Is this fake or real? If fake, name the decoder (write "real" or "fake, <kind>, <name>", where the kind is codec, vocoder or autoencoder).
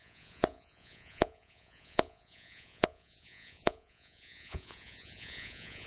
fake, vocoder, Vocos